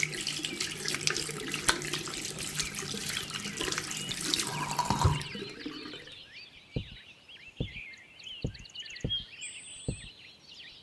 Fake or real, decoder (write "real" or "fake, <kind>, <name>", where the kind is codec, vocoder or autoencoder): real